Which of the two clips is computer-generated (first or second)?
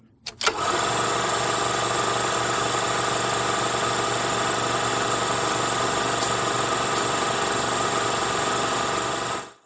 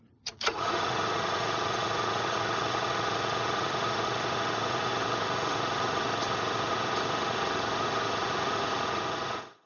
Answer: second